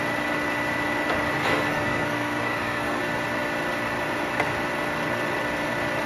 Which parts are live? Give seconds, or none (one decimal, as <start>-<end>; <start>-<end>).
0.0-1.4; 3.0-6.1